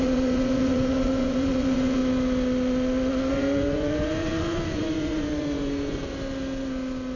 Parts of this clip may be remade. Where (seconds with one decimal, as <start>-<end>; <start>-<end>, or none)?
0.0-2.0; 3.3-6.0